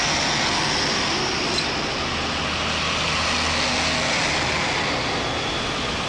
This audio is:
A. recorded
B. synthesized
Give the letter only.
A